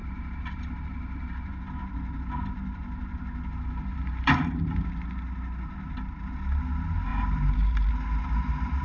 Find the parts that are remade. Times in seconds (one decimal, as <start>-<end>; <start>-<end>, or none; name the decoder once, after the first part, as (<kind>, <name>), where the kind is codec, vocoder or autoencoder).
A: 0.0-1.5 (vocoder, BigVGAN v2); 3.9-4.9; 7.1-7.9